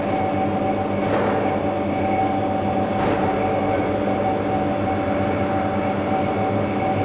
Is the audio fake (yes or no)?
no